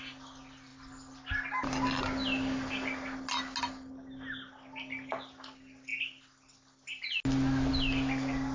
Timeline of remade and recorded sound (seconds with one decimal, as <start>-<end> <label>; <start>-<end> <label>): 0.0-8.5 recorded